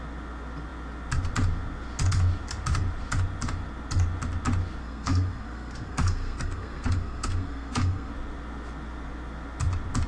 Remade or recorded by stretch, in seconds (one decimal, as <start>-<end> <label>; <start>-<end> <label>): 0.0-4.8 recorded; 4.8-8.1 remade; 8.1-10.1 recorded